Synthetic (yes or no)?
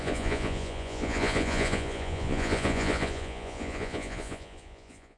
yes